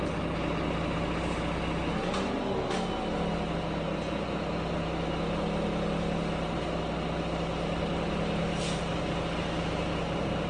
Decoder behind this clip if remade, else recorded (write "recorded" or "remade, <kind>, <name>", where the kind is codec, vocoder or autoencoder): recorded